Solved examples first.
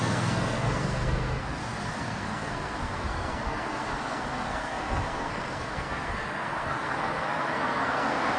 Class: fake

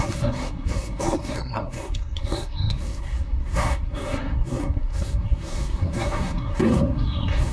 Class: fake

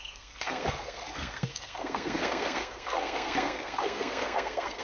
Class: fake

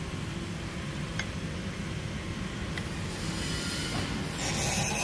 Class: real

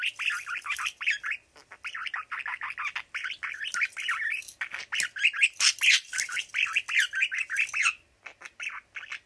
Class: real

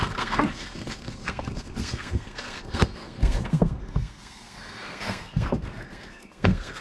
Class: fake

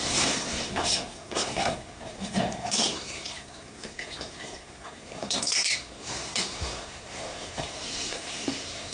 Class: fake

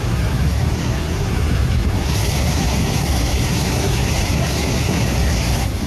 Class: fake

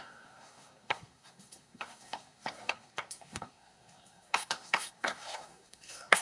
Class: fake